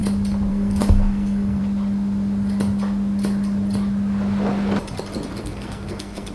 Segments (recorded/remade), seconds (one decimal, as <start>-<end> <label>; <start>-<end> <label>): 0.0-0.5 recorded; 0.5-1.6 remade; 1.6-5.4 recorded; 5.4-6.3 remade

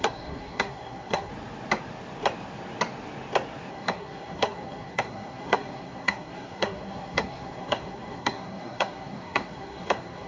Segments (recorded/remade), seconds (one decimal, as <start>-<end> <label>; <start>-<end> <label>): 0.0-1.3 remade; 1.3-3.7 recorded; 3.7-10.3 remade

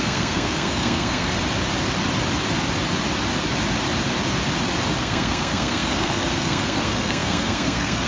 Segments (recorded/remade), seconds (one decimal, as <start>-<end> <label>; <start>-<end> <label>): 0.0-1.3 remade; 1.3-5.0 recorded; 5.0-8.1 remade